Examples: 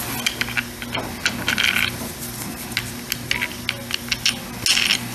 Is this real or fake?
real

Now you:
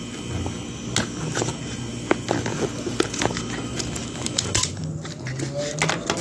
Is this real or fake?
real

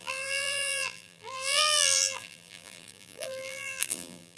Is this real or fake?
fake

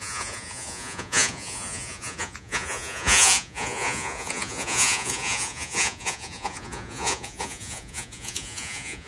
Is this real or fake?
fake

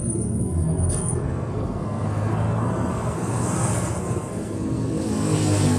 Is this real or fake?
fake